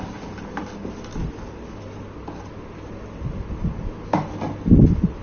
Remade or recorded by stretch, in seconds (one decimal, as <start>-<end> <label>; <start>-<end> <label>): 0.0-5.2 recorded